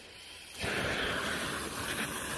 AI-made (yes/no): no